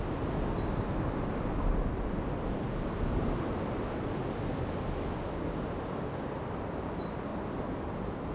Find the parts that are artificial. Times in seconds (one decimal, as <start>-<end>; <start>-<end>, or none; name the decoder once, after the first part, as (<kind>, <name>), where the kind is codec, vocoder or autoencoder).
none